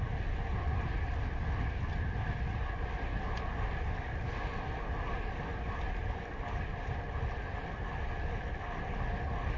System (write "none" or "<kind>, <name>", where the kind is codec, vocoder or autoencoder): none